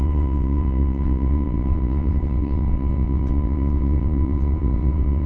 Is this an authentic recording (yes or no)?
no